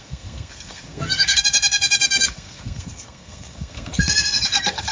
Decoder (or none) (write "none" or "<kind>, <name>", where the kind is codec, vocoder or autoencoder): codec, SNAC